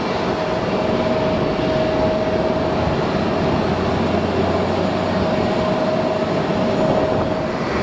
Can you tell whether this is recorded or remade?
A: recorded